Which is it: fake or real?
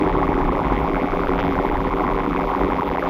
fake